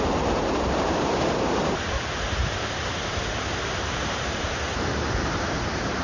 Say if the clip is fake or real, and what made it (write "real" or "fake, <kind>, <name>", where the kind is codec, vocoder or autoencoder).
fake, vocoder, BigVGAN v2